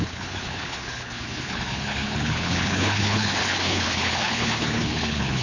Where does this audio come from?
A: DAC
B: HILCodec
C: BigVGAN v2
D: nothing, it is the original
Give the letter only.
B